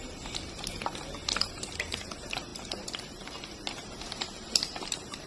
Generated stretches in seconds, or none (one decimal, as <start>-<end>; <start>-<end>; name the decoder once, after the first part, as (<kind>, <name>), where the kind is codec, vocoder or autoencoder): 0.0-0.8 (vocoder, BigVGAN v2); 1.4-5.3